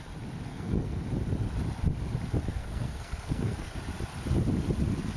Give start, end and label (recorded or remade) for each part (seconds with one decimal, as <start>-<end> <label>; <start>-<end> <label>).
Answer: 0.0-0.5 recorded; 0.5-1.0 remade; 1.0-2.5 recorded; 2.5-3.7 remade; 3.7-5.2 recorded